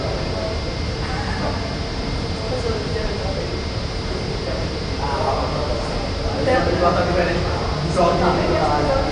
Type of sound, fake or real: real